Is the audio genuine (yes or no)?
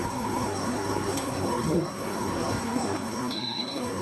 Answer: no